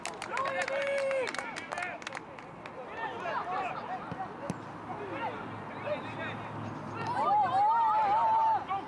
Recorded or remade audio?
recorded